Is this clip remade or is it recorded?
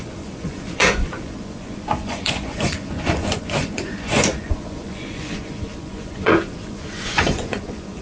remade